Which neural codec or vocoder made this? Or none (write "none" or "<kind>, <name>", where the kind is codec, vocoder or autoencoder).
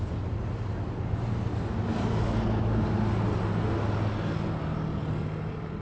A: none